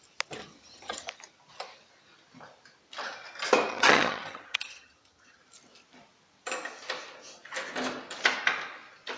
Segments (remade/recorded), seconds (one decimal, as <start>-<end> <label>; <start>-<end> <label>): 0.0-0.4 recorded; 0.4-1.1 remade; 1.1-3.7 recorded; 3.7-5.4 remade; 5.4-9.2 recorded